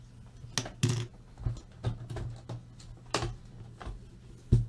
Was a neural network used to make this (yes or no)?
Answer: no